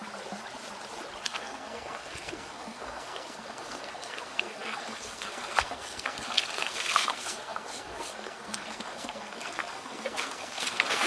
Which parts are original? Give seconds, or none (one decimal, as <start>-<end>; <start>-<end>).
0.0-1.2